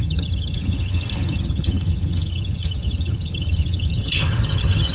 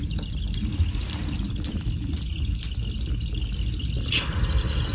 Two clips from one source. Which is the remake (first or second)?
first